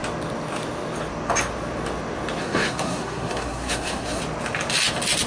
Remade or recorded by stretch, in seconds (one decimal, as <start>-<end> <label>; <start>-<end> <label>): 0.0-2.4 recorded; 2.4-4.2 remade; 4.2-5.3 recorded